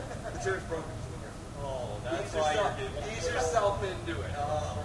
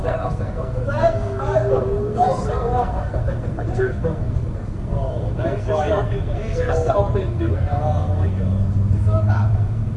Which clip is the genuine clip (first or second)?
first